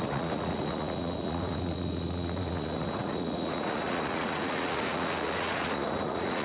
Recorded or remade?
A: remade